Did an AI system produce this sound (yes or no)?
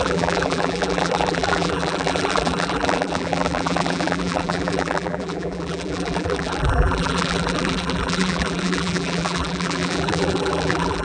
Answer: yes